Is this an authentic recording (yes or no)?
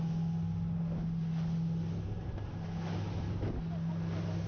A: yes